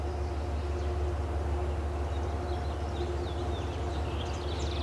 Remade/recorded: recorded